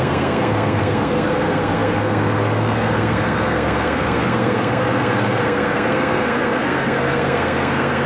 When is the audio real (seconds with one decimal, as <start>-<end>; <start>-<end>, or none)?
none